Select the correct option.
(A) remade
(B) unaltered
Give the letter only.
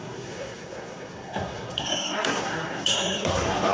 A